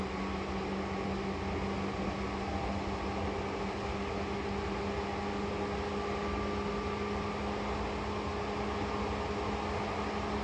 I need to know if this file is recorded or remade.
recorded